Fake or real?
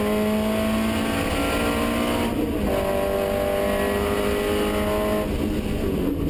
real